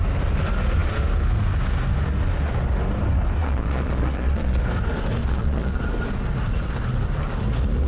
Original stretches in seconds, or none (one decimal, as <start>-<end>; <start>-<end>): 0.0-3.4; 4.6-5.2; 5.8-7.9